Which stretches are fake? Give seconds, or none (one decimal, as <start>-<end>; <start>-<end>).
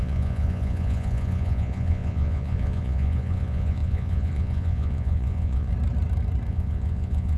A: 0.0-5.7; 6.5-7.4